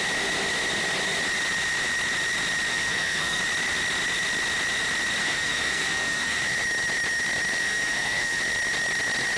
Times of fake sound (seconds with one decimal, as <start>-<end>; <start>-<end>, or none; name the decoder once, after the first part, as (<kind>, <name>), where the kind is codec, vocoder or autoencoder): 2.7-3.4 (codec, SNAC); 5.2-6.4; 7.6-8.4